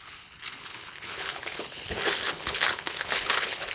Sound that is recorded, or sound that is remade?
remade